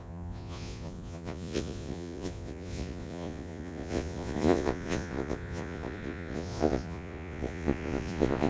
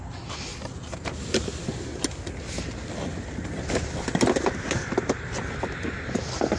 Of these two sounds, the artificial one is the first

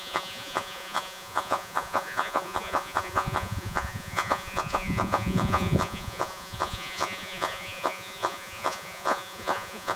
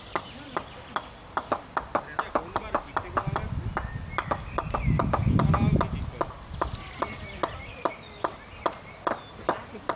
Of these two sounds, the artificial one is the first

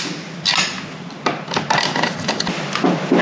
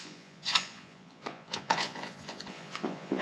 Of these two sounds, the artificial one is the second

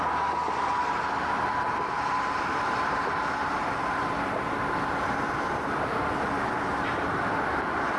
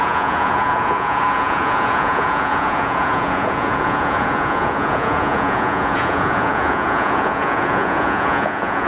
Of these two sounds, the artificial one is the second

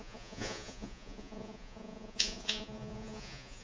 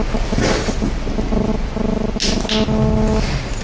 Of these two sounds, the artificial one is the first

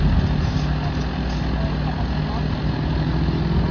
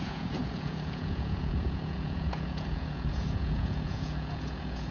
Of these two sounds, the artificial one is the second